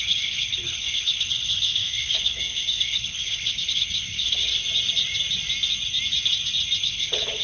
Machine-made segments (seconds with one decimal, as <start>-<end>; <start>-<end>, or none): 0.0-4.5; 6.8-7.4